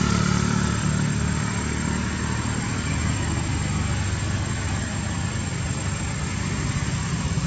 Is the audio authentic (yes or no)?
yes